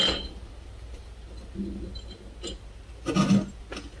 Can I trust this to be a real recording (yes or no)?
yes